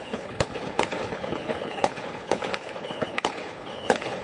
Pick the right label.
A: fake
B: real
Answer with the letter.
A